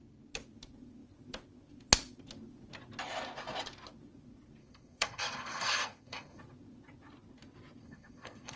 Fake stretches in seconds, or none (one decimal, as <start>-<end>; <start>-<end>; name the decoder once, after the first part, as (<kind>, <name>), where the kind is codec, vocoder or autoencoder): 4.6-6.4 (codec, SNAC); 7.8-8.6